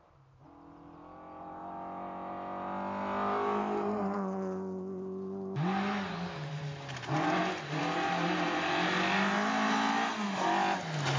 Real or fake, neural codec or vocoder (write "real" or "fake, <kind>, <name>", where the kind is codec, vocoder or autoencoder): real